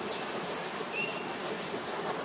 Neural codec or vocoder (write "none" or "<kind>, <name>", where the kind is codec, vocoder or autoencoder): none